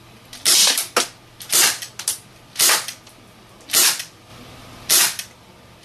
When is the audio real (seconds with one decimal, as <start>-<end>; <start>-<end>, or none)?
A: 0.0-5.8